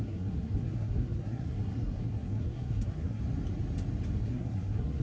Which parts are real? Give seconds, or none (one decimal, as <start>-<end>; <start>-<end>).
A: 3.2-4.2